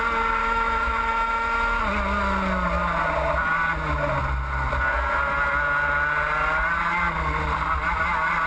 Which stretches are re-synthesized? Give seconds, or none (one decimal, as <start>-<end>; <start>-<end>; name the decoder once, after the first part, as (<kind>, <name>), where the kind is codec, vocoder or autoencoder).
0.4-1.8 (autoencoder, DAC-VAE)

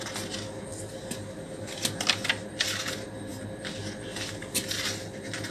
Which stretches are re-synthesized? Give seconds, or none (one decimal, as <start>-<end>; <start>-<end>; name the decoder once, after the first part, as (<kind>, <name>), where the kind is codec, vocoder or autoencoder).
3.3-3.8 (vocoder, BigVGAN v2)

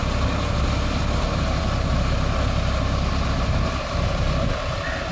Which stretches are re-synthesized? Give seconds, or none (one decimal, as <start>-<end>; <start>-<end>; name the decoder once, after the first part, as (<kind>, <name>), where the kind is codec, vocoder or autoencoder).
none

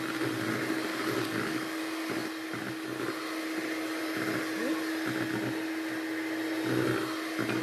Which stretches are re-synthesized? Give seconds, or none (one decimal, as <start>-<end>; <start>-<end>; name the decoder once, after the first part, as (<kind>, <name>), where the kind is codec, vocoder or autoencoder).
0.9-1.8 (codec, DAC)

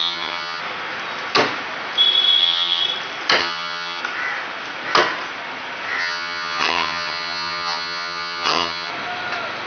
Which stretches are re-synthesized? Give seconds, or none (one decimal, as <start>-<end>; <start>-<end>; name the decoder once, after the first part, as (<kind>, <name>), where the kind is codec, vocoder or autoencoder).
0.0-0.6 (vocoder, HiFi-GAN); 2.4-2.8; 3.4-4.0; 6.0-8.9

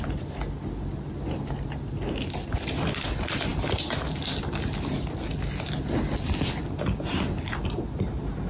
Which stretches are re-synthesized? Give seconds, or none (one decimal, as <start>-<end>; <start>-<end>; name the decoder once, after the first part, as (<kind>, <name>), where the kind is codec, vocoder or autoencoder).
none

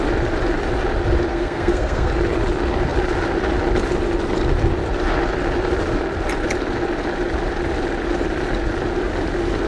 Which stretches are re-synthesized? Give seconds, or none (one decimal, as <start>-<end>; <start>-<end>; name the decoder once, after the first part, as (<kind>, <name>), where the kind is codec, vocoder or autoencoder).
1.3-2.1 (codec, SNAC)

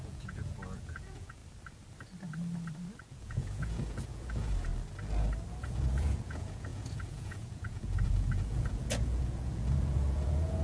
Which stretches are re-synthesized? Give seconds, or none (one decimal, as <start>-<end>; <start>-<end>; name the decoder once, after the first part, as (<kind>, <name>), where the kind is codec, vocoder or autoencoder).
0.0-1.4 (vocoder, Vocos); 3.0-4.7; 5.6-10.6